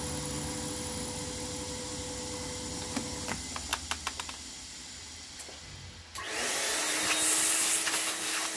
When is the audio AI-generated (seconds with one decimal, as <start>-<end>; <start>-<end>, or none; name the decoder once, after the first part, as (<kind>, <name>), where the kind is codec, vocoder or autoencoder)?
none